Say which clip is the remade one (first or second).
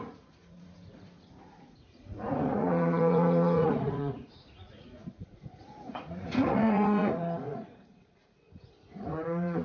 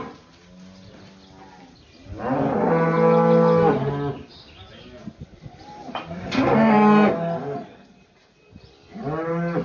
first